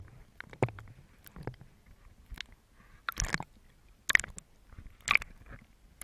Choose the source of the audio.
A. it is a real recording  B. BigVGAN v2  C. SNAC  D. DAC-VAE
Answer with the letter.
A